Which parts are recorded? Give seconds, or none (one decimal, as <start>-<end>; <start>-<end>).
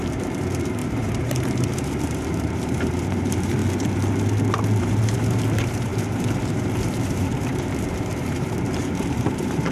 3.6-4.8